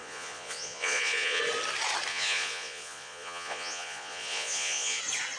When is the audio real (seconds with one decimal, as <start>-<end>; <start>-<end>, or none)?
1.4-2.1; 5.0-5.4